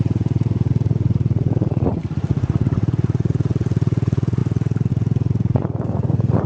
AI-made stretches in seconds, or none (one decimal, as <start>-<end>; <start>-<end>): 0.0-6.5